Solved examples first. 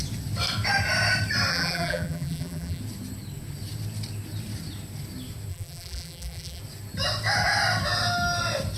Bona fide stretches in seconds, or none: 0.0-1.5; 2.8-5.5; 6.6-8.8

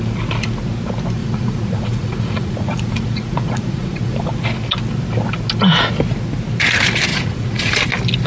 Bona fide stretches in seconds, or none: 0.0-1.2; 4.3-7.1; 7.7-8.3

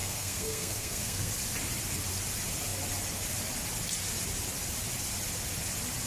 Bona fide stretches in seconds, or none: 1.3-6.1

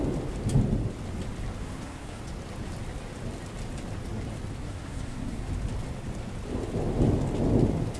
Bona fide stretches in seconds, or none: 0.0-1.6; 2.2-4.6; 5.5-8.0

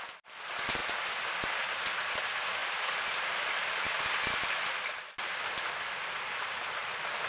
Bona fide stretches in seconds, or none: 0.0-7.3

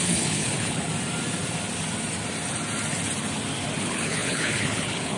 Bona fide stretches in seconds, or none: 0.9-3.8